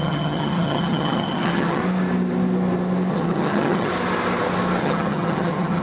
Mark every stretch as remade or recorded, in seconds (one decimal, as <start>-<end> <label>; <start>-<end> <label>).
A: 0.0-1.8 remade; 1.8-3.1 recorded; 3.1-3.9 remade; 3.9-4.8 recorded; 4.8-5.8 remade